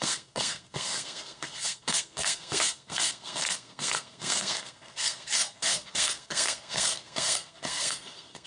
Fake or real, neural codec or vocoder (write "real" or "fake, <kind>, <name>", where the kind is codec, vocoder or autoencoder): fake, codec, SNAC